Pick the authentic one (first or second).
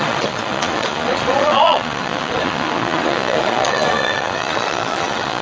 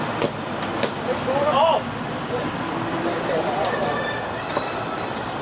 second